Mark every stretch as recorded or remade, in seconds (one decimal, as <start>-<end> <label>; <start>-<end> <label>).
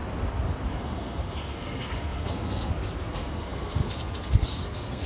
0.0-0.7 recorded; 0.7-5.1 remade